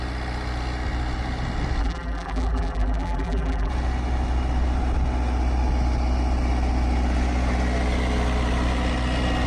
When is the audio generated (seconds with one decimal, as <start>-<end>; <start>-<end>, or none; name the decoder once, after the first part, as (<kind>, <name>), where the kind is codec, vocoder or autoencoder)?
1.8-3.7 (vocoder, BigVGAN v2)